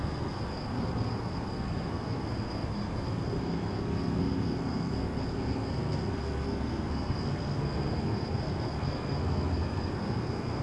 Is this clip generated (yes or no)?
yes